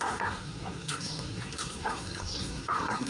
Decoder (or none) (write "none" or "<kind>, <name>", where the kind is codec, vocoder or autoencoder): codec, SNAC